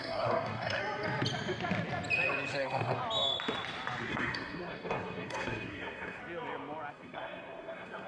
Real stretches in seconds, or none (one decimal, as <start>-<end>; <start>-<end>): 0.8-2.5; 3.0-4.1; 6.2-6.9